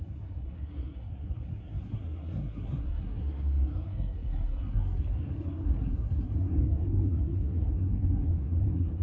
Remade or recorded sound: remade